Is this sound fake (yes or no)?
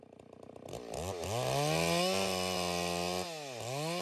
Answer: no